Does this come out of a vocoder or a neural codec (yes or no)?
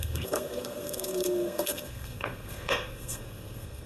yes